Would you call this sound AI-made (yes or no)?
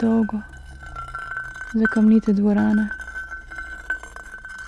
no